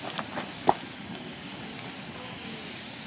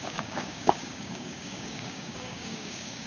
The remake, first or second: second